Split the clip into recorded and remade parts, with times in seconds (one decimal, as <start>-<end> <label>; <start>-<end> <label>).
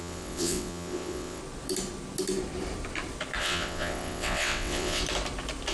0.0-1.4 remade; 1.4-3.4 recorded; 3.4-5.0 remade; 5.0-5.7 recorded